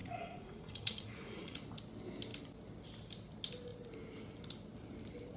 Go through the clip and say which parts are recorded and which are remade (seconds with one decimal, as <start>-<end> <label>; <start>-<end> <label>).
0.0-1.6 remade; 1.6-5.4 recorded